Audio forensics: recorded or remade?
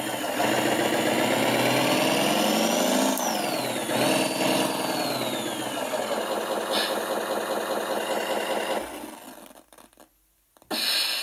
recorded